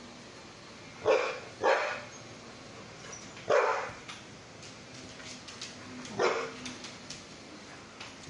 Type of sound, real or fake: real